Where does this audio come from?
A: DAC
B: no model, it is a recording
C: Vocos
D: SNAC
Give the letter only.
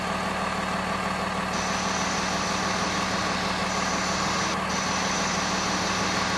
B